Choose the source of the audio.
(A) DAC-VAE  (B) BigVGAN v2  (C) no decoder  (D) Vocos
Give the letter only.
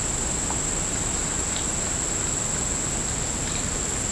C